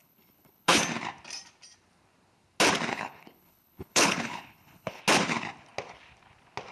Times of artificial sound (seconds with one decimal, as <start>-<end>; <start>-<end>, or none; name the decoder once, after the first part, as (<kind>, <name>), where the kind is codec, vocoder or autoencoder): 0.0-0.8 (codec, HILCodec); 2.9-5.0